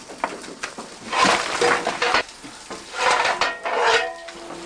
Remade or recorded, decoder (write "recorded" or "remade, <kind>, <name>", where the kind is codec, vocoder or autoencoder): recorded